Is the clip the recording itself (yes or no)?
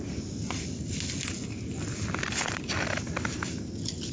yes